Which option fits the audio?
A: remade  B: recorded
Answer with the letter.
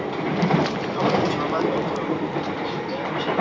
B